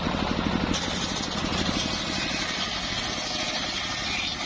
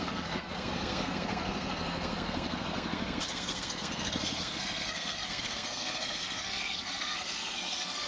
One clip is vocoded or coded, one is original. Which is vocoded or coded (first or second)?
second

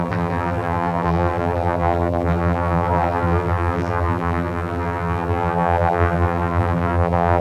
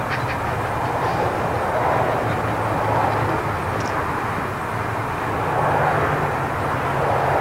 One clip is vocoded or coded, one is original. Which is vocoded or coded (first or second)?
first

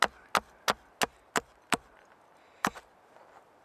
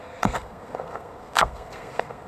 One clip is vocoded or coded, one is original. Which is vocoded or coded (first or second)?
second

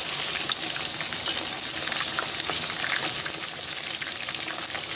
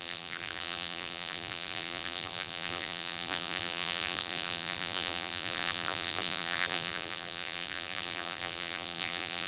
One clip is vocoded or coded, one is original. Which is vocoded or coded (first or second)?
second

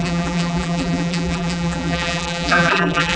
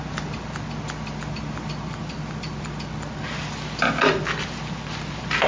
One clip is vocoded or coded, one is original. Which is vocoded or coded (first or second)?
first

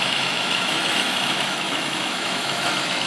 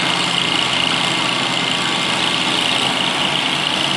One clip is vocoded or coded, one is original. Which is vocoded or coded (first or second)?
first